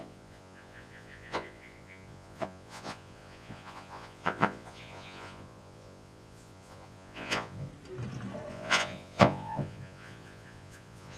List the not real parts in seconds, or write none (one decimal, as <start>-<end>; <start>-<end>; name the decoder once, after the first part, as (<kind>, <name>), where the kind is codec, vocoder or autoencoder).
0.0-7.7 (vocoder, Vocos); 8.5-11.2